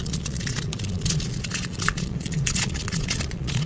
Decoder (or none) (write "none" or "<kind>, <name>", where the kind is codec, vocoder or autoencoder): vocoder, Vocos